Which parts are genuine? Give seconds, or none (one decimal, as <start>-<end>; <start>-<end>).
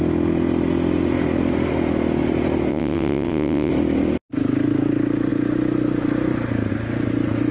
0.0-2.7; 3.7-7.5